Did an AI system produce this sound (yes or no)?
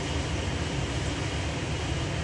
no